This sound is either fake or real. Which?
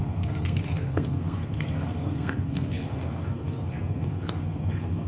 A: fake